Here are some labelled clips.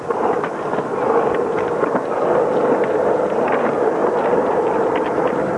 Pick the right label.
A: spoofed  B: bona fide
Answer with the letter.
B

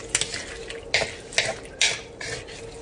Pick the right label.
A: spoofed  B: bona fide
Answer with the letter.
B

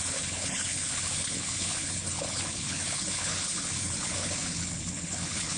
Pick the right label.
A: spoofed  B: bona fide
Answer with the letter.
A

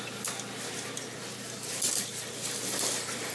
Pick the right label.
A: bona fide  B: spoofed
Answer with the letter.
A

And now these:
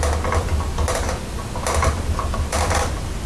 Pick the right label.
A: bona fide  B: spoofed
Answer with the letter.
A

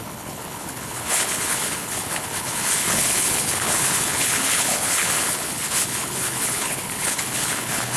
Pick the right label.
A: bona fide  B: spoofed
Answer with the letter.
B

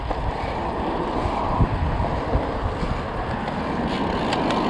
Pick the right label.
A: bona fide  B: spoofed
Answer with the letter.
A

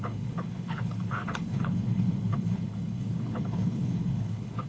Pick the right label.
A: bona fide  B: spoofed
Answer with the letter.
B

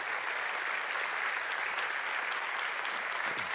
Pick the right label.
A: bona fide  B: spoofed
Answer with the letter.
A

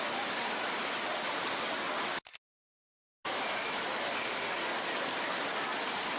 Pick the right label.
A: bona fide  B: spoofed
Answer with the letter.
A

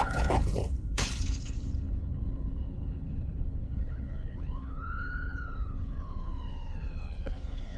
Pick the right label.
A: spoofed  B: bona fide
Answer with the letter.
A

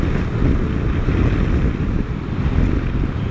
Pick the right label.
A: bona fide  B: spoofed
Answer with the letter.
A